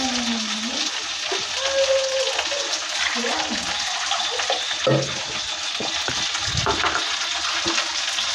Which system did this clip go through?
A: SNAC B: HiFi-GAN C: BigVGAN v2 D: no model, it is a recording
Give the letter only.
D